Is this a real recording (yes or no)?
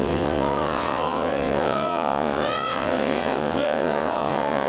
no